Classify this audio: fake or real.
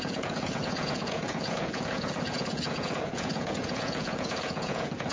fake